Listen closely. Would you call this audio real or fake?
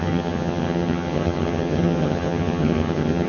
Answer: fake